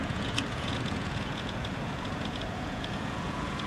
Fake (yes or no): yes